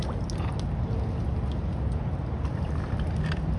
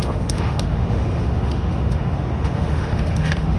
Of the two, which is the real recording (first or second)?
first